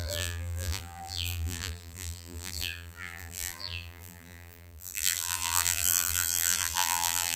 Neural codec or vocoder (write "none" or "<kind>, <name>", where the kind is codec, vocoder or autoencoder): vocoder, BigVGAN v2